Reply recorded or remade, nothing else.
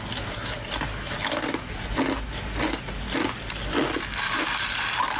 recorded